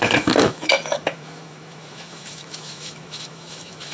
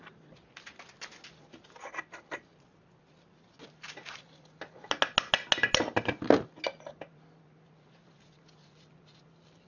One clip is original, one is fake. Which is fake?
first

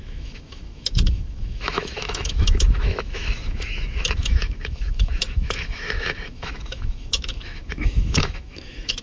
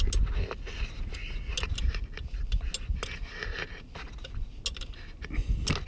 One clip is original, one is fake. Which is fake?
first